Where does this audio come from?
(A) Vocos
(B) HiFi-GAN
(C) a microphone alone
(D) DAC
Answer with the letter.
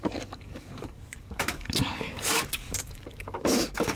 D